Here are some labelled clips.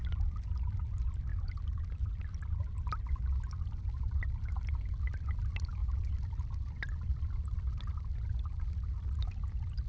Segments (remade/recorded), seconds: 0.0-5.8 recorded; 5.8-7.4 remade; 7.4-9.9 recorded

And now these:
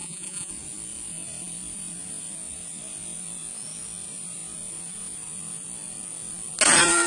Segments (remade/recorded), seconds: 0.0-0.5 remade; 0.5-7.1 recorded

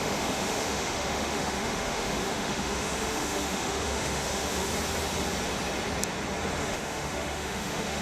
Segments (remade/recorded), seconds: 0.0-4.7 remade; 4.7-6.6 recorded; 6.6-8.0 remade

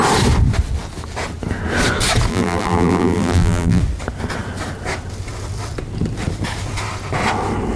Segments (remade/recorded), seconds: 0.0-2.3 recorded; 2.3-3.8 remade; 3.8-7.8 recorded

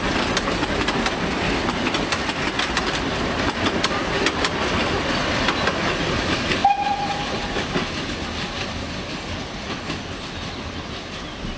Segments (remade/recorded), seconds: 0.0-11.6 recorded